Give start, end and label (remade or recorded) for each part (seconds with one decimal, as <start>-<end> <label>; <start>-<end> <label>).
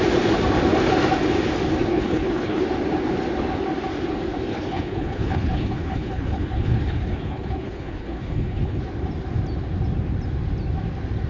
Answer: 0.0-1.9 recorded; 1.9-2.6 remade; 2.6-4.5 recorded; 4.5-8.8 remade; 8.8-11.3 recorded